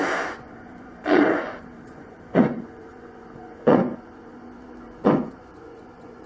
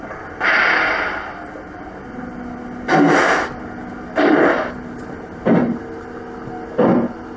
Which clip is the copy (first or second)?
first